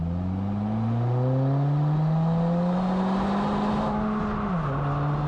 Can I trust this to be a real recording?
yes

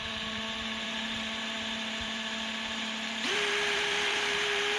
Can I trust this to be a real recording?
no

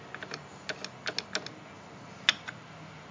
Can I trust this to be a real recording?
yes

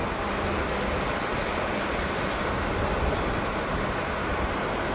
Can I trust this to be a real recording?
yes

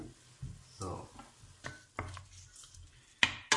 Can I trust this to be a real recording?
yes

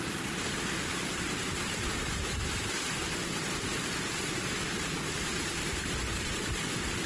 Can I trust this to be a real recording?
no